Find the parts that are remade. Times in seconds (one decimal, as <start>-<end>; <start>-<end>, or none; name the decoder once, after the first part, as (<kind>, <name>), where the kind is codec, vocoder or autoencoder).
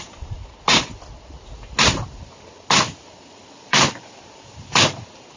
0.0-0.4 (vocoder, BigVGAN v2); 3.6-5.4